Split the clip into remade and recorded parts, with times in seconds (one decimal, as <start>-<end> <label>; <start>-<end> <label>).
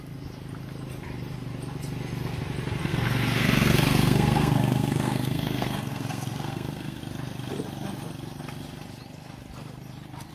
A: 0.0-2.8 recorded; 2.8-7.0 remade; 7.0-10.3 recorded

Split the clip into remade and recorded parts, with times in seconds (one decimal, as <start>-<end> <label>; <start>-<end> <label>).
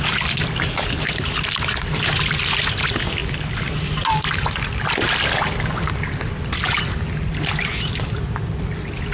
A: 0.0-9.1 recorded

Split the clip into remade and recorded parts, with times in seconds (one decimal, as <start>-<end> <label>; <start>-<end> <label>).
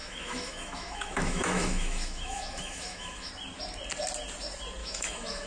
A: 0.0-3.3 remade; 3.3-4.8 recorded; 4.8-5.5 remade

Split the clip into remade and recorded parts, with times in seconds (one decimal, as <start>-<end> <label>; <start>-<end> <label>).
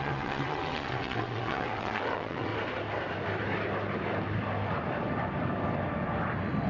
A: 0.0-2.5 remade; 2.5-6.7 recorded